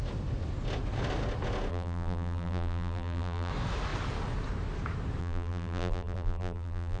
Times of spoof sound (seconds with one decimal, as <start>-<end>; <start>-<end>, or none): 1.7-3.5; 5.2-7.0